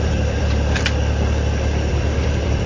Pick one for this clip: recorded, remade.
remade